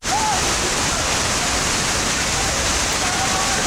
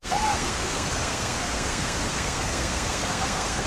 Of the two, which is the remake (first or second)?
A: second